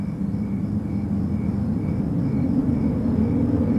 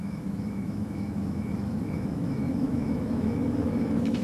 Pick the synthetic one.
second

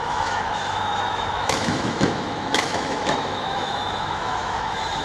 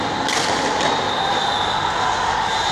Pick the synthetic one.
first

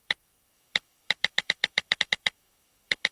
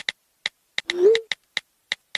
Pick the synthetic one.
first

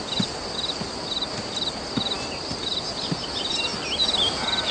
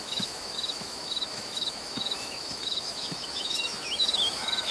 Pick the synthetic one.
second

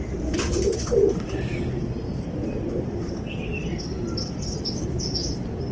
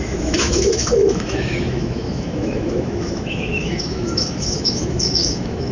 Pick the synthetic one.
second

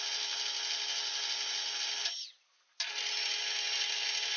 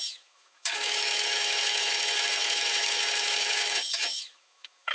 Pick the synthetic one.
second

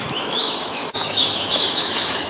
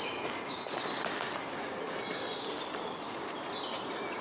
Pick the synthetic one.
first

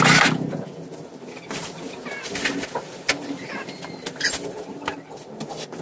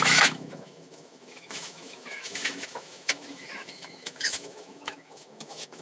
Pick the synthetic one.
second